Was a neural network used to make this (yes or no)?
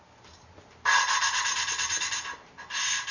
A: no